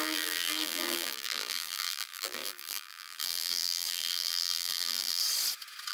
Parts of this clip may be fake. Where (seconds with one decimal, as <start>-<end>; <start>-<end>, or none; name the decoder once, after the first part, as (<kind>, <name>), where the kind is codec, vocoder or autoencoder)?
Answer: 0.0-5.2 (vocoder, BigVGAN v2)